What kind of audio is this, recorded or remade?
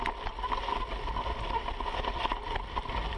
recorded